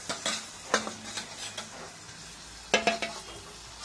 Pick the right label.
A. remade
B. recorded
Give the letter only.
B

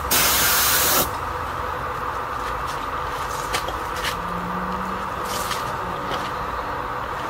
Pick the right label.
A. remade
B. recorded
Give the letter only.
B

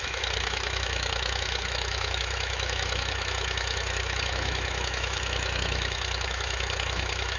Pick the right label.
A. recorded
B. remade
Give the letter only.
B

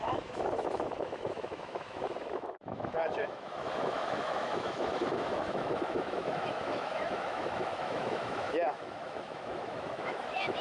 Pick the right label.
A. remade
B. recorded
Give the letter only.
A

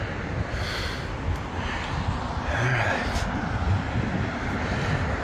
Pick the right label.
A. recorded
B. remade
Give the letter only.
A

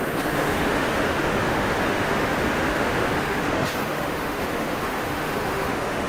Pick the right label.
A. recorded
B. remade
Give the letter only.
B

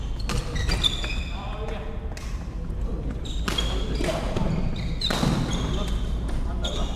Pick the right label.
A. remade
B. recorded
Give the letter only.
B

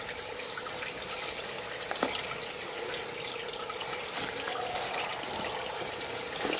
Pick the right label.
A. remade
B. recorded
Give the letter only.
B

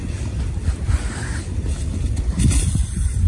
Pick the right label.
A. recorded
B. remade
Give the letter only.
A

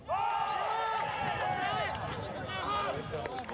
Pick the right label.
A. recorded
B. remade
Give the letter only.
A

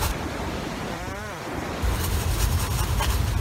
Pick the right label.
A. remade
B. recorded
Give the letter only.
B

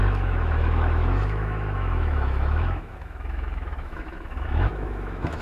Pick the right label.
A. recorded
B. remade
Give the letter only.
B